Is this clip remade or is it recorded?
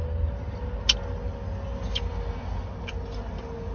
recorded